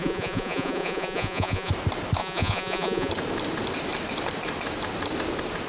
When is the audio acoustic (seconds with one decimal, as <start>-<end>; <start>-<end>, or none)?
1.7-2.2; 3.1-5.7